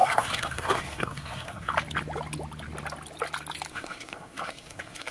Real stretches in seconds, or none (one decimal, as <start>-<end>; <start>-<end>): 1.7-3.7